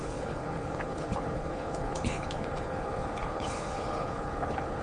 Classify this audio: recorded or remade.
remade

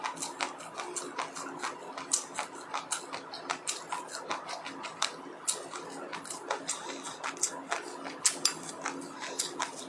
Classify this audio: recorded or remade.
recorded